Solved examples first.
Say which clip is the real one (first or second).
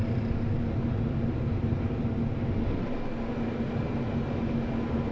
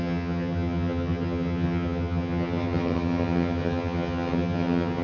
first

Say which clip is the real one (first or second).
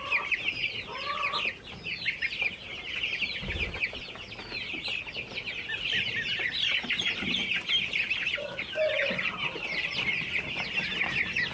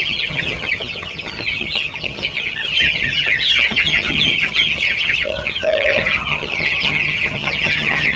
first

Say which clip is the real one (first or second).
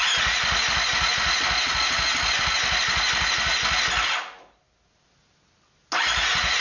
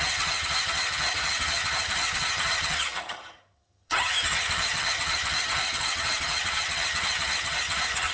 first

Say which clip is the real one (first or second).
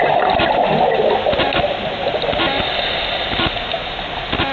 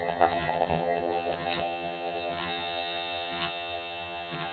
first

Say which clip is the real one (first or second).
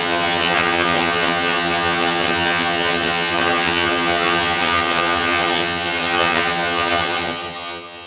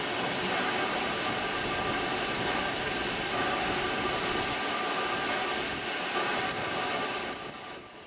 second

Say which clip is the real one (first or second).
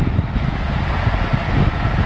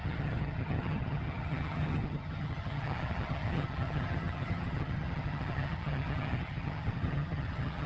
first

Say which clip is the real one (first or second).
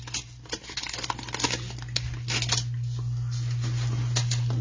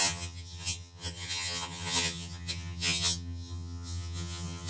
first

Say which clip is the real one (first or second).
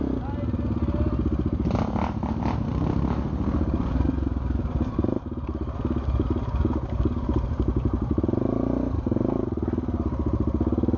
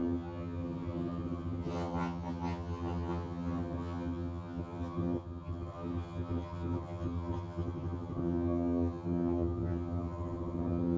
first